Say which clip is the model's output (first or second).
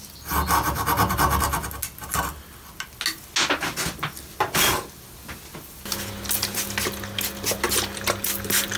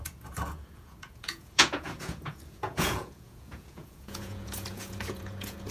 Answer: second